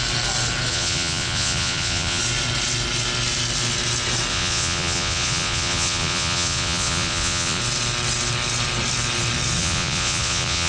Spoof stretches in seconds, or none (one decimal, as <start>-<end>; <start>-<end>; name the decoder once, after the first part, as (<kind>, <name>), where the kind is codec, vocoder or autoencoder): 0.7-2.2 (vocoder, Vocos); 4.3-7.6; 9.6-10.7